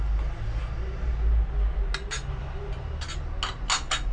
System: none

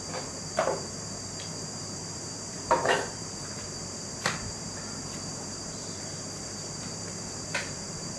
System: vocoder, BigVGAN v2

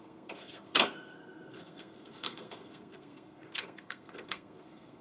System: codec, SNAC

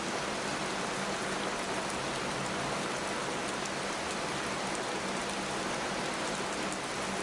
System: none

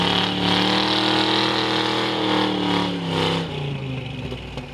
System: none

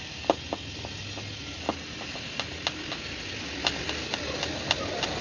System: none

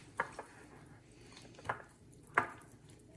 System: none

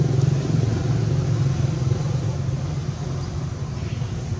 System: none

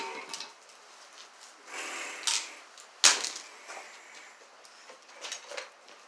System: none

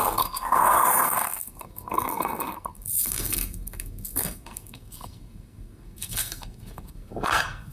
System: codec, SNAC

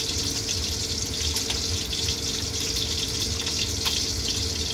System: none